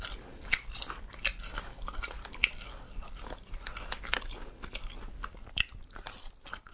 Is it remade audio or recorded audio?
recorded